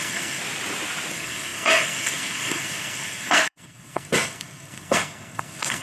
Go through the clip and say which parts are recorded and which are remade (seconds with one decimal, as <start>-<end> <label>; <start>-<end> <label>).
0.0-0.4 remade; 0.4-1.1 recorded; 1.1-5.8 remade

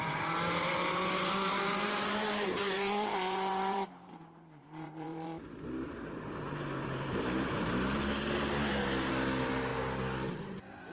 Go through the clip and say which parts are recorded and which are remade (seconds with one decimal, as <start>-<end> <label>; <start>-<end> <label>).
0.0-9.7 remade; 9.7-10.4 recorded; 10.4-10.9 remade

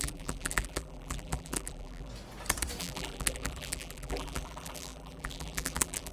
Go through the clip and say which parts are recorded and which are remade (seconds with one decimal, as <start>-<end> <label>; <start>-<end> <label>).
0.0-2.1 remade; 2.1-2.8 recorded; 2.8-6.1 remade

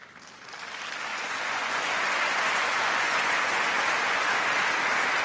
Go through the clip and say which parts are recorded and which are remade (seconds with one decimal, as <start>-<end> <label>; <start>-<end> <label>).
0.0-1.1 recorded; 1.1-4.2 remade; 4.2-5.2 recorded

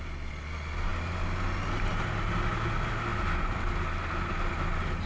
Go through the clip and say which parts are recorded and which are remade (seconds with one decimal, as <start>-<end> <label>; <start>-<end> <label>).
0.0-5.1 recorded

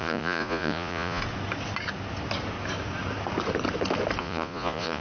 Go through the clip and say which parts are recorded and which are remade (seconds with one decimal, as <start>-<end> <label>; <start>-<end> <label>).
0.0-1.2 remade; 1.2-4.2 recorded; 4.2-5.0 remade

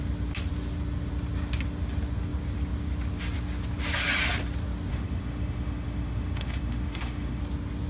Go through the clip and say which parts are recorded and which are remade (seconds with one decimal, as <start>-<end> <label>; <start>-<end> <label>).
0.0-4.9 recorded; 4.9-7.4 remade; 7.4-7.9 recorded